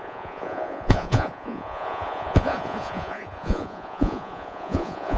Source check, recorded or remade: remade